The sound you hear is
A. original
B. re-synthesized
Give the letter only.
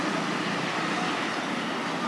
A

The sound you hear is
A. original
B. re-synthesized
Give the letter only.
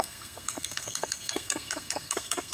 B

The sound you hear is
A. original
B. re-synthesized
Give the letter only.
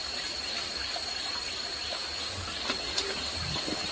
B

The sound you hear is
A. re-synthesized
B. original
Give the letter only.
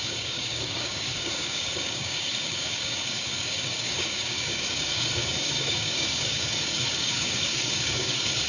A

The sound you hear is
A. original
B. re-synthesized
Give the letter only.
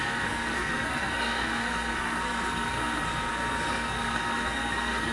B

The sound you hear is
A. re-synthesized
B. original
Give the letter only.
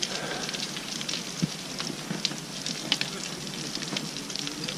B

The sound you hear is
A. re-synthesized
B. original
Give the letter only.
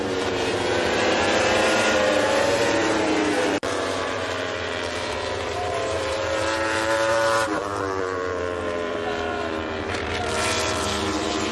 A